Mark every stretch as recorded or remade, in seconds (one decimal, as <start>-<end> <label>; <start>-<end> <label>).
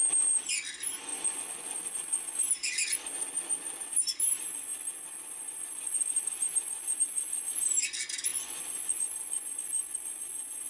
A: 0.0-1.1 recorded; 1.1-1.8 remade; 1.8-8.3 recorded; 8.3-9.5 remade; 9.5-10.7 recorded